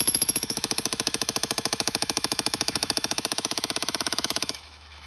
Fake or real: fake